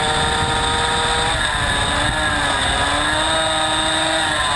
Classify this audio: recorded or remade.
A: recorded